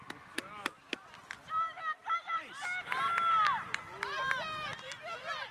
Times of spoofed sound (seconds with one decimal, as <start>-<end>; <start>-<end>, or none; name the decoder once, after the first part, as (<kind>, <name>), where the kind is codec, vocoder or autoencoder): 0.6-1.5 (vocoder, BigVGAN v2); 2.0-2.6